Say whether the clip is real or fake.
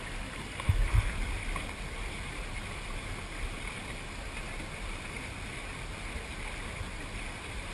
real